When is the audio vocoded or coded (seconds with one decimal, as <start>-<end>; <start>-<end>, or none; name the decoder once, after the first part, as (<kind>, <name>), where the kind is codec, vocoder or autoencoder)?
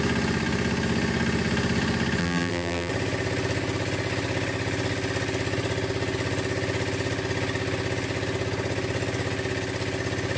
2.2-2.9 (vocoder, BigVGAN v2)